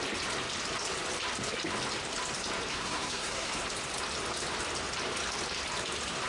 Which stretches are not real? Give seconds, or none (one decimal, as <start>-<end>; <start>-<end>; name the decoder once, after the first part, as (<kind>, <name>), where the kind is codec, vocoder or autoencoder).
2.7-3.6 (codec, SNAC)